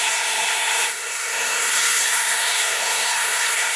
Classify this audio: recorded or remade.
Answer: remade